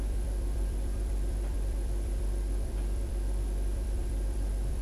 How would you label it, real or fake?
fake